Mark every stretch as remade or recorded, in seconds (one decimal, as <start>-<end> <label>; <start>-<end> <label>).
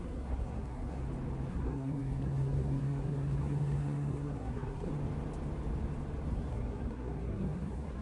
0.0-1.0 remade; 1.0-1.5 recorded; 1.5-4.9 remade; 4.9-6.3 recorded; 6.3-8.0 remade